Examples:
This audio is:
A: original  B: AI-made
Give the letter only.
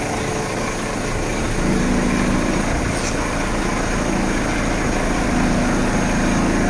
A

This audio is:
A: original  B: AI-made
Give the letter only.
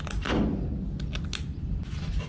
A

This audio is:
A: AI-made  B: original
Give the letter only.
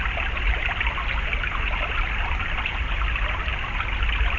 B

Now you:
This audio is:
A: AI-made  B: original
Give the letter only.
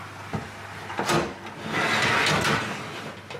B